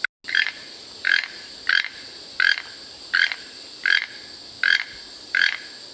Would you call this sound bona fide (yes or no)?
yes